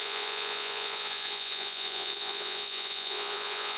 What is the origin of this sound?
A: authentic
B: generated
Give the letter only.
B